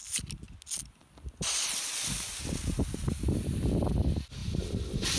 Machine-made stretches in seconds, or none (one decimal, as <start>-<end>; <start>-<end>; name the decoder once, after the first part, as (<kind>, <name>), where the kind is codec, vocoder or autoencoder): 4.4-5.2 (vocoder, BigVGAN v2)